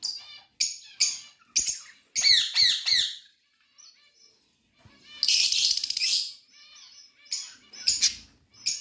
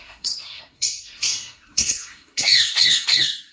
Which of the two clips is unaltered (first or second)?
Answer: first